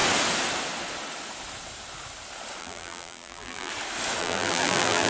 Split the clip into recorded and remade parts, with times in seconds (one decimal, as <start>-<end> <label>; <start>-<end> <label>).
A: 0.0-2.6 recorded; 2.6-3.7 remade; 3.7-4.2 recorded; 4.2-5.1 remade